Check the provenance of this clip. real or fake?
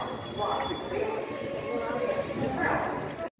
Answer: real